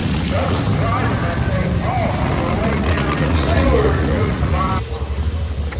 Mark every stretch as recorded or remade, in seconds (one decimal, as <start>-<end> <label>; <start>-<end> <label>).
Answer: 0.0-0.6 remade; 0.6-2.6 recorded; 2.6-4.7 remade; 4.7-5.8 recorded